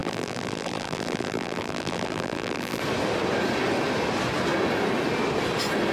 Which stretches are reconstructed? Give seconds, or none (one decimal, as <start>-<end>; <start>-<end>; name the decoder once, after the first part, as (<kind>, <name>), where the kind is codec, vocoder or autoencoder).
0.0-2.8 (vocoder, BigVGAN v2)